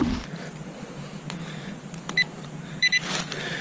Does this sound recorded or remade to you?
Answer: recorded